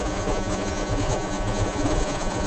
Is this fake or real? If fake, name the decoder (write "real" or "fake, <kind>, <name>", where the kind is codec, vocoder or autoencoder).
fake, vocoder, Vocos